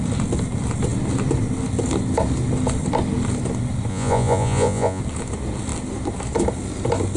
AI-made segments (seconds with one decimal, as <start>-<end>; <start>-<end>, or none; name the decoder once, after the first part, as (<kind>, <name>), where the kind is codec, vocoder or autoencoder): 3.9-5.0 (vocoder, Vocos)